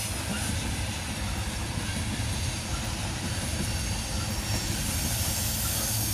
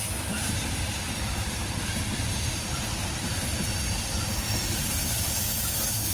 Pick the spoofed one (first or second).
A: second